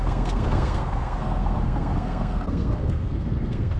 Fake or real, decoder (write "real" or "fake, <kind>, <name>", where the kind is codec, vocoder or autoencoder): fake, codec, SNAC